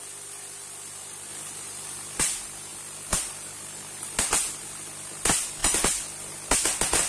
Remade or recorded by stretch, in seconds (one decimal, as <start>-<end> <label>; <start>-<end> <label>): 0.0-7.1 recorded